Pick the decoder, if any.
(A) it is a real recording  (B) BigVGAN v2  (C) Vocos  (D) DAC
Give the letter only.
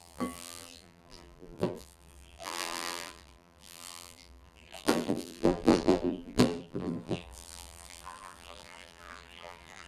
B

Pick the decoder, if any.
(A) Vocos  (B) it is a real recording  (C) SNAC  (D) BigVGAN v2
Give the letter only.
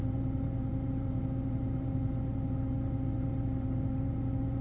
D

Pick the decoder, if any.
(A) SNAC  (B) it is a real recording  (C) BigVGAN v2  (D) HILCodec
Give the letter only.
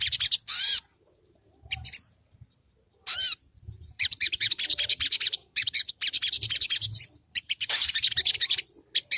C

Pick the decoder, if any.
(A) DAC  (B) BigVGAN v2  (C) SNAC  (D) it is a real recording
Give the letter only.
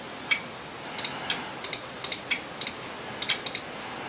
D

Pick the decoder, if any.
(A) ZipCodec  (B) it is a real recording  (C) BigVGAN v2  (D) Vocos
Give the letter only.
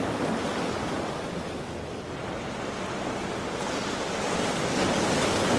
B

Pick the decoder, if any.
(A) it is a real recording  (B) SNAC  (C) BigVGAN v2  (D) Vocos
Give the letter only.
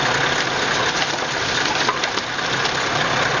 A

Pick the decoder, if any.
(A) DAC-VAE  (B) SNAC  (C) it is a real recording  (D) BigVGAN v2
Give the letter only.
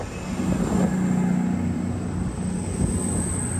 C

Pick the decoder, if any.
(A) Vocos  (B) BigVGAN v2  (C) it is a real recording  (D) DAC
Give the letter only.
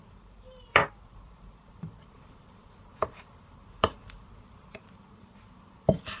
B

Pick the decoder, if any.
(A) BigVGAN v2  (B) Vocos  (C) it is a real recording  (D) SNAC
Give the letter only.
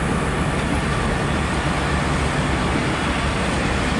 C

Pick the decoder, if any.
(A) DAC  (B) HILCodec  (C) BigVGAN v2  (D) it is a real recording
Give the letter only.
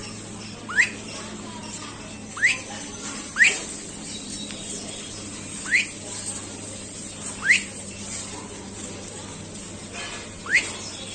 D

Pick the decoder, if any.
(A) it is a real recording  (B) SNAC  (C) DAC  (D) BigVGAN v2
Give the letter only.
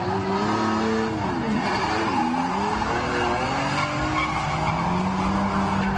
A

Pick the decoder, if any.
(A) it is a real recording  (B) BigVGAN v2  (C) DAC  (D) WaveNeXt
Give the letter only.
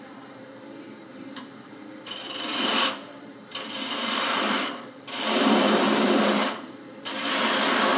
B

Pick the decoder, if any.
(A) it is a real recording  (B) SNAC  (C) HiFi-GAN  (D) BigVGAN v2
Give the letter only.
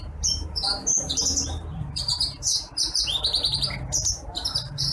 D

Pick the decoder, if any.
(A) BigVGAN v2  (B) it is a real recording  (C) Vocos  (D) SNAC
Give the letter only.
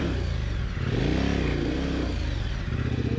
B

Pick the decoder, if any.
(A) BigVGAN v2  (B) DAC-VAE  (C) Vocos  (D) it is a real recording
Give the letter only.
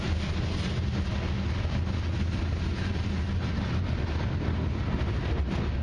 D